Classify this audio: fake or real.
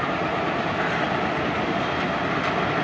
real